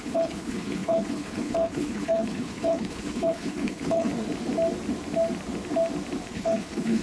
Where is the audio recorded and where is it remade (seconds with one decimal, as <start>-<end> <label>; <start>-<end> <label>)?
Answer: 0.0-4.1 remade; 4.1-6.3 recorded; 6.3-7.0 remade